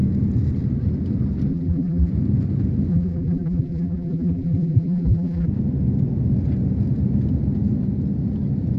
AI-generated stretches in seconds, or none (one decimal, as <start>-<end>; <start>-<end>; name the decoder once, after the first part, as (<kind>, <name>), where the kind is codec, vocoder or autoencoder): 1.5-2.1 (vocoder, BigVGAN v2); 2.9-5.5